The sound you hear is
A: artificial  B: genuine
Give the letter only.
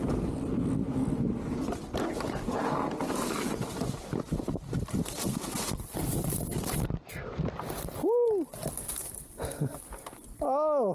B